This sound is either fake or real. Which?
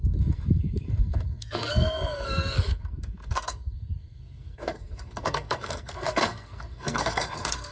fake